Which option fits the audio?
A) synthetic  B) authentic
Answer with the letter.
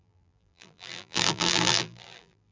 A